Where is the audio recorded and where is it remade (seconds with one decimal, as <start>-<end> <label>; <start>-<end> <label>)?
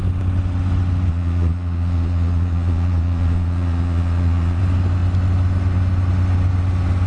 0.0-1.1 recorded; 1.1-4.6 remade; 4.6-7.1 recorded